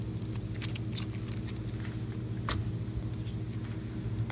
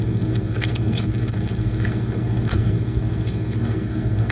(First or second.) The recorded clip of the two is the first